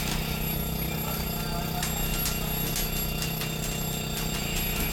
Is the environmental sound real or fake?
real